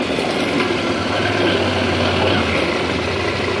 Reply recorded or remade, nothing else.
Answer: recorded